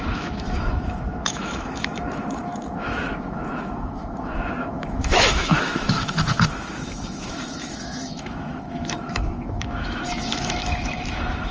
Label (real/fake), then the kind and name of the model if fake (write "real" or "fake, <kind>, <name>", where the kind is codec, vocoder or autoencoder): fake, autoencoder, DAC-VAE